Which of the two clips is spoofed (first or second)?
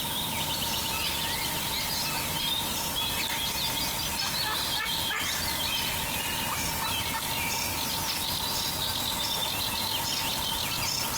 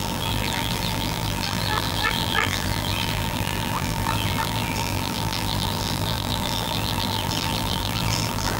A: second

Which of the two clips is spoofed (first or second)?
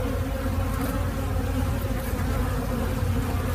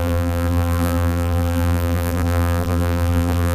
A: second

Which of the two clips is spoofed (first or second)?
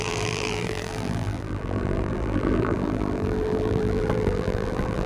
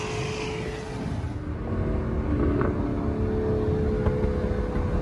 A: first